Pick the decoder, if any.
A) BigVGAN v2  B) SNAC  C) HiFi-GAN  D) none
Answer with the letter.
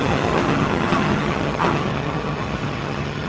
C